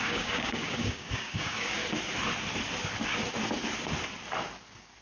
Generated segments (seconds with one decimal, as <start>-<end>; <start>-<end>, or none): 0.0-1.8